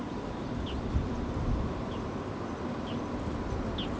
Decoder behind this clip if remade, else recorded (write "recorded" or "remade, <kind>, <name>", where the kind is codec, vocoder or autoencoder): recorded